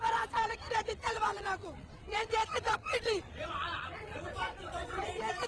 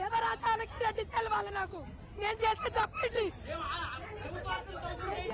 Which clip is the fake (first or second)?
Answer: first